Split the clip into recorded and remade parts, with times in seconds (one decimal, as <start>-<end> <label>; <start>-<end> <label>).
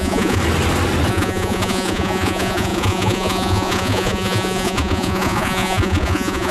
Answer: 0.0-0.4 remade; 0.4-1.1 recorded; 1.1-6.5 remade